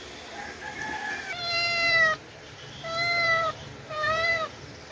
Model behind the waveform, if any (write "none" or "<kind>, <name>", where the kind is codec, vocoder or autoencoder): vocoder, BigVGAN v2